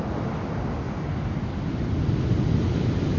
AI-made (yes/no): no